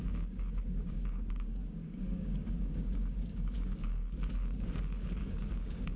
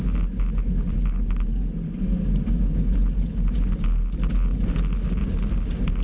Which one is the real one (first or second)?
second